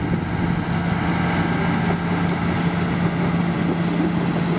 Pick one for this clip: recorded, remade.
recorded